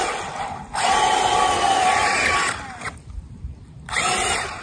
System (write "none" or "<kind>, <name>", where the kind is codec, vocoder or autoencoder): none